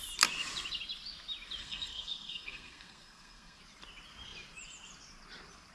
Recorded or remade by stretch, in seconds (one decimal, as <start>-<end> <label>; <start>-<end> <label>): 0.0-1.6 recorded; 1.6-3.6 remade; 3.6-5.7 recorded